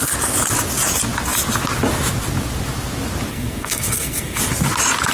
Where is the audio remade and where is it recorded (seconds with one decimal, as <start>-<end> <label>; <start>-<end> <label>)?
0.0-3.3 recorded; 3.3-4.4 remade; 4.4-5.1 recorded